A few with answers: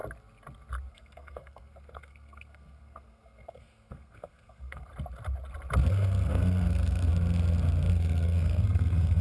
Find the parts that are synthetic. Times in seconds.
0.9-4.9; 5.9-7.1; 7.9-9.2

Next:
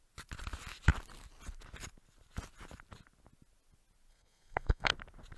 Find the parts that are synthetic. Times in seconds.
4.1-4.9

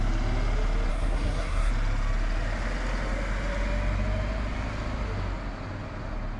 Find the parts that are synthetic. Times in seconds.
0.9-1.7

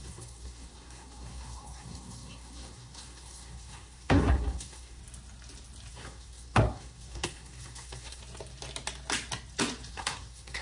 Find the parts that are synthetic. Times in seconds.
0.0-5.0; 5.9-8.2; 9.9-10.6

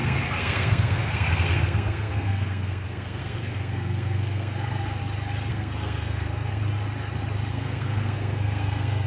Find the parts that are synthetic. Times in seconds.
0.0-5.0; 5.5-6.6; 7.5-9.1

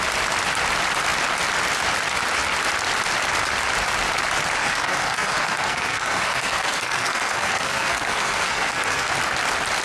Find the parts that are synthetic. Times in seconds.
4.6-9.1

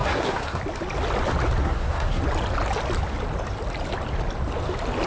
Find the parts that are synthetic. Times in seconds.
0.0-0.6; 1.6-2.2